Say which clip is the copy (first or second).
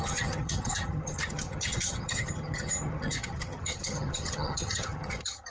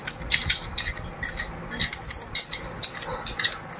first